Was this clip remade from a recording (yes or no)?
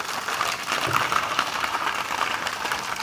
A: no